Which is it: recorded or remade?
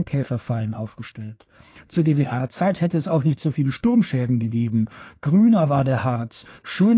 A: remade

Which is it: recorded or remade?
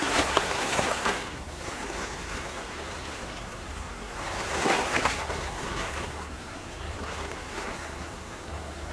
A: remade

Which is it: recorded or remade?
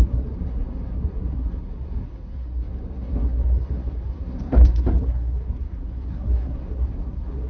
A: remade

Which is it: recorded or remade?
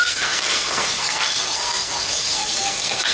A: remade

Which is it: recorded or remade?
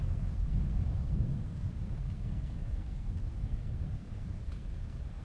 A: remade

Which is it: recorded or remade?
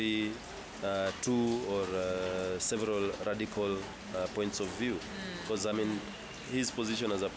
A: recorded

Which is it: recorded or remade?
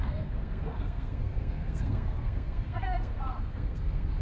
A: remade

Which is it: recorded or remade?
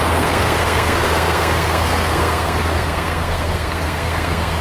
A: remade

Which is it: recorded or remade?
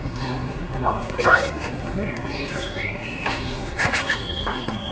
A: remade